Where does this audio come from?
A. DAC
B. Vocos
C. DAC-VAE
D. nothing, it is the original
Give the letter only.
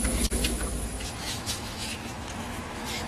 C